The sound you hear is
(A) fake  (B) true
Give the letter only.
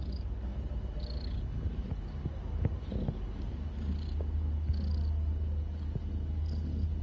B